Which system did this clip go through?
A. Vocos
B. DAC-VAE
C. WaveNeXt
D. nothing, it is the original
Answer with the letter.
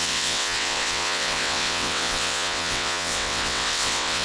C